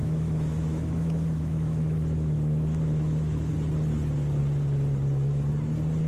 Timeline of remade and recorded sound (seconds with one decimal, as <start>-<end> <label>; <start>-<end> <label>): 0.0-3.5 remade; 3.5-6.1 recorded